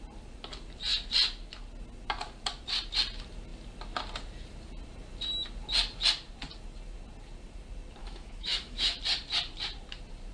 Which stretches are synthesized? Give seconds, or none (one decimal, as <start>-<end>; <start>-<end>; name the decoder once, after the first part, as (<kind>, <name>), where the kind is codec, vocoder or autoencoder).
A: 8.0-9.0 (autoencoder, DAC-VAE)